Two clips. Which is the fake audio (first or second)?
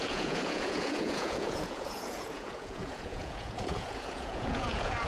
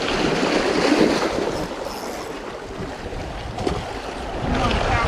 first